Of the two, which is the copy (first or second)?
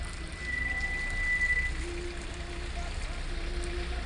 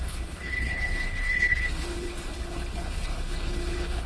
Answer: second